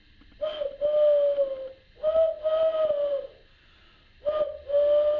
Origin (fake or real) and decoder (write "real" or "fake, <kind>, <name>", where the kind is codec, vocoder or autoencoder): real